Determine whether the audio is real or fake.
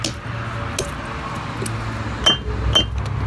real